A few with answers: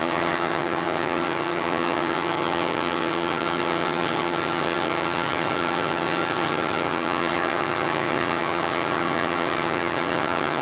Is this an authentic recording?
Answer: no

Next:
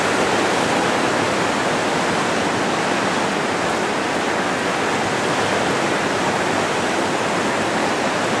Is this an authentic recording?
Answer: yes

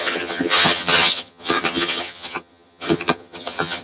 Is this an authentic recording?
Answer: no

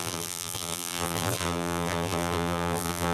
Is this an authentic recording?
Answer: no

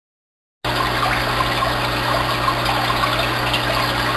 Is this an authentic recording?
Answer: yes